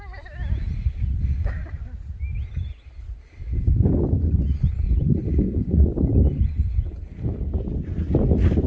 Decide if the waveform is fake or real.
real